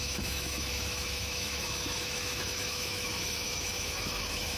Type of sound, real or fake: fake